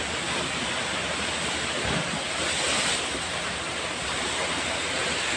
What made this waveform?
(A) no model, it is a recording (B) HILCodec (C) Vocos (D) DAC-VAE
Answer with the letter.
A